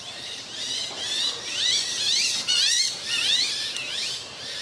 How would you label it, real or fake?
fake